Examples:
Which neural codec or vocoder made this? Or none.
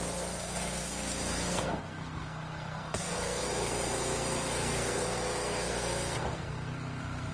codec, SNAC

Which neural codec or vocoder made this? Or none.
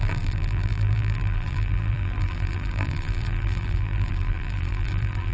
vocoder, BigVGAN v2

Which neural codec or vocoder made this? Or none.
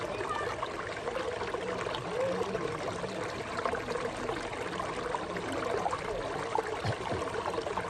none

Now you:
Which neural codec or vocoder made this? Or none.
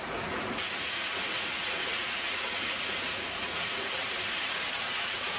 vocoder, Vocos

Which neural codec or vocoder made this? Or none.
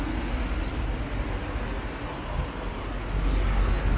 none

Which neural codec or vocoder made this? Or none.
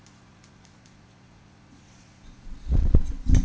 vocoder, Vocos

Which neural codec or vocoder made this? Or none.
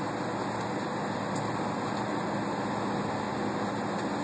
none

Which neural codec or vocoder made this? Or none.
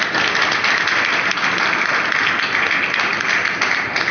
none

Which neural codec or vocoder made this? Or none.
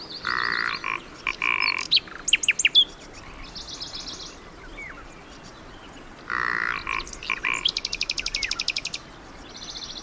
none